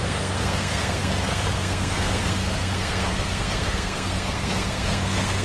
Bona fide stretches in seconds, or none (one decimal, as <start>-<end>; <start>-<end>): none